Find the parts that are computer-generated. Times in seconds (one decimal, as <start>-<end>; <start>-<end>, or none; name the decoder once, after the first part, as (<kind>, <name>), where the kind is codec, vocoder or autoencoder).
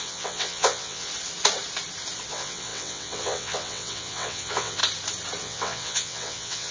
0.0-1.1 (vocoder, WaveNeXt); 2.3-4.8; 5.4-6.7